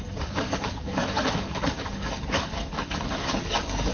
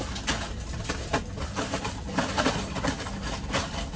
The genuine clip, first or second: second